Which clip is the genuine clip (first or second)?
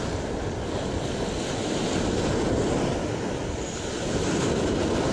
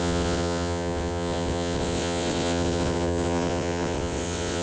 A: first